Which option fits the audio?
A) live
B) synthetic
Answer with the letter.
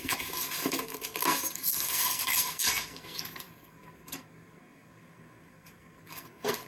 B